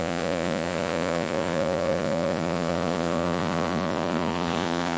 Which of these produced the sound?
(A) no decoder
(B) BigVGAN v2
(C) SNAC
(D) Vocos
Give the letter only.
D